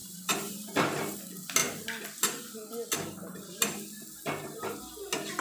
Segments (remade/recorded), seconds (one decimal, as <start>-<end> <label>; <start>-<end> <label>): 0.0-1.2 remade; 1.2-5.4 recorded